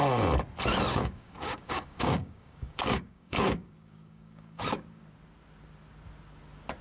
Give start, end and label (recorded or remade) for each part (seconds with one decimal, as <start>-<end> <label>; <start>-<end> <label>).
0.0-0.9 recorded; 0.9-5.0 remade; 5.0-6.8 recorded